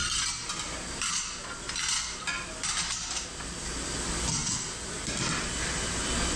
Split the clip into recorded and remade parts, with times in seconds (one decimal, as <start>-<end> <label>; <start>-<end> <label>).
0.0-6.4 recorded